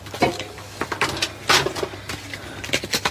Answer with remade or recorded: recorded